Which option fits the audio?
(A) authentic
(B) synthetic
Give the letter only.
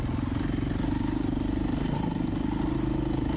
A